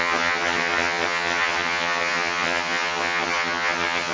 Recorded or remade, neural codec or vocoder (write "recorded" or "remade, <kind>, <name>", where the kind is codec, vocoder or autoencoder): remade, vocoder, HiFi-GAN